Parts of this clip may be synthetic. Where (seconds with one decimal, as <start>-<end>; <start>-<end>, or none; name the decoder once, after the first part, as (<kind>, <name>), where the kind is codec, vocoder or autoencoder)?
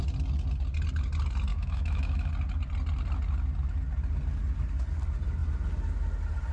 1.5-2.3 (autoencoder, DAC-VAE)